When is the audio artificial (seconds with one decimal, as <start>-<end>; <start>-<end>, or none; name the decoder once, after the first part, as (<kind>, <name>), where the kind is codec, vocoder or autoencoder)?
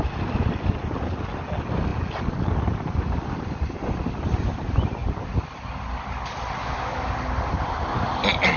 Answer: 6.6-7.1 (autoencoder, DAC-VAE)